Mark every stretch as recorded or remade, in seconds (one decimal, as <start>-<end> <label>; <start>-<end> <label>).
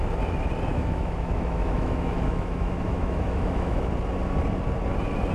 0.0-0.7 recorded; 0.7-3.9 remade; 3.9-5.3 recorded